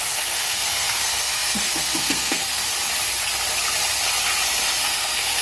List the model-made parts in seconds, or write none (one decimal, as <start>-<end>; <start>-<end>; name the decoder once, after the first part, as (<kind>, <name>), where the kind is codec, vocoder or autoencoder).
0.0-2.6 (codec, SNAC); 4.8-5.4